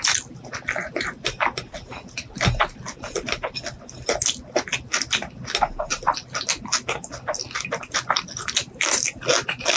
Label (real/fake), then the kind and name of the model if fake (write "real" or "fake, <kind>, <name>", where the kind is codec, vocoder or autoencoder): real